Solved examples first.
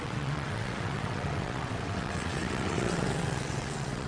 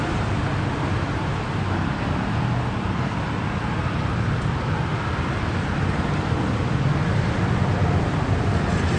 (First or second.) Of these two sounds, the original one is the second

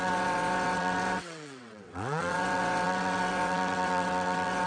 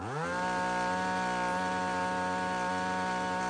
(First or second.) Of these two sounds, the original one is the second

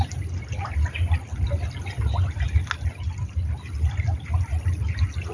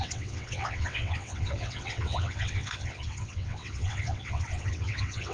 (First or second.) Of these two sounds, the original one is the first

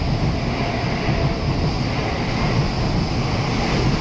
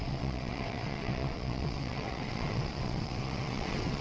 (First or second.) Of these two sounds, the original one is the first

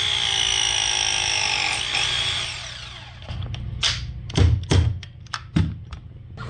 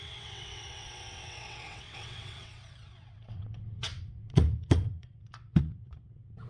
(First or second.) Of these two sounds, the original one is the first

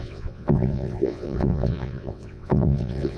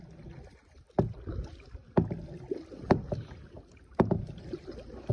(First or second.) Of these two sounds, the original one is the second